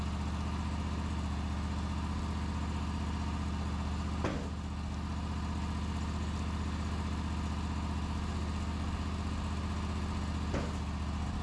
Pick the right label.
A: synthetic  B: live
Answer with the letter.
B